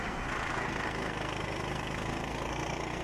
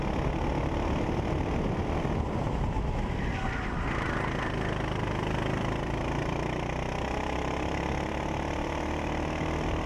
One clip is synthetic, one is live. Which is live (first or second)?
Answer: second